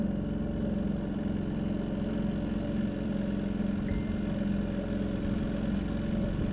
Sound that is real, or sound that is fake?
real